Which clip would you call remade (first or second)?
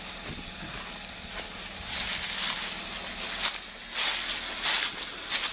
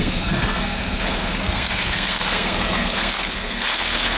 second